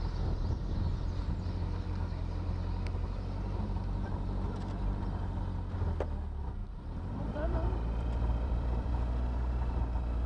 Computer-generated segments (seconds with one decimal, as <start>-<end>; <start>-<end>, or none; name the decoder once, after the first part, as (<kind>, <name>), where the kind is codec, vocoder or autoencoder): 6.6-8.9 (vocoder, BigVGAN v2)